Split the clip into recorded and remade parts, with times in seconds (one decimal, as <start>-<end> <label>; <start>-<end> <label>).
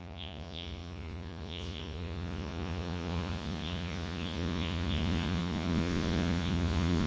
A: 0.0-7.1 remade